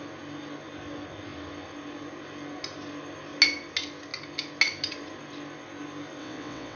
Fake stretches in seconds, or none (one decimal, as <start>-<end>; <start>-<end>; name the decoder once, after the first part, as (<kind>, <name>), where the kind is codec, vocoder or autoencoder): 6.2-6.8 (vocoder, WaveNeXt)